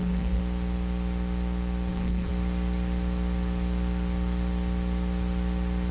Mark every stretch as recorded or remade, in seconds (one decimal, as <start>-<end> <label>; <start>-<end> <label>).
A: 0.0-0.4 remade; 0.4-1.9 recorded; 1.9-2.3 remade; 2.3-5.9 recorded